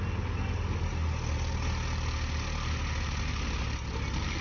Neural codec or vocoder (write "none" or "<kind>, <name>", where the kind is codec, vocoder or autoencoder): none